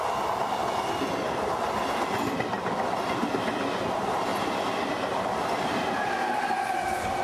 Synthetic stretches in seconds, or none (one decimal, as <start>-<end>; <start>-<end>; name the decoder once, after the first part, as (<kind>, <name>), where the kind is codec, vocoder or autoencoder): none